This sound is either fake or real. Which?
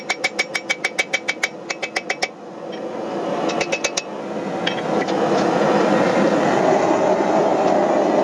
real